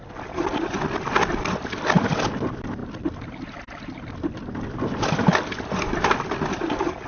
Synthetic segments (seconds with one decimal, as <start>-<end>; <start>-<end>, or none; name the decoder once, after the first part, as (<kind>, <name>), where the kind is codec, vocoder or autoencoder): none